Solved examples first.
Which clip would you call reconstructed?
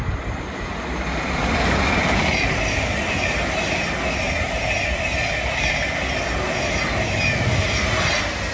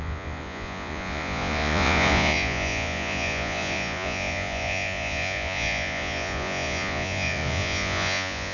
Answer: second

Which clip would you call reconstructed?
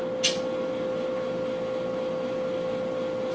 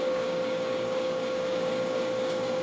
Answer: second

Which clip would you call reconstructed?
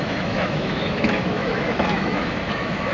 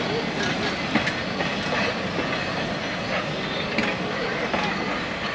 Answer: first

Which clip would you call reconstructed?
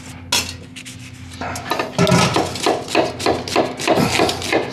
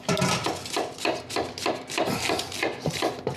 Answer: second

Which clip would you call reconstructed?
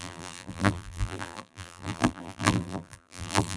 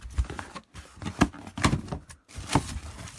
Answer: first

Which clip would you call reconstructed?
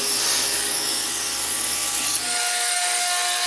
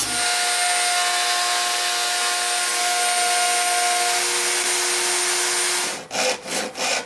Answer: first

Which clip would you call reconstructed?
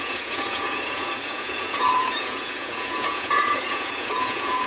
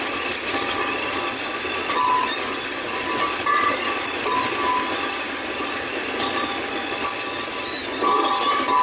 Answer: first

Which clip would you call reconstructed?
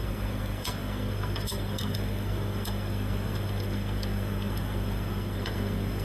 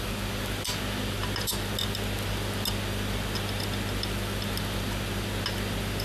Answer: first